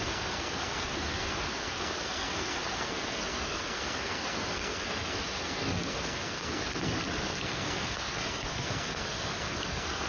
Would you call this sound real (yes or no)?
no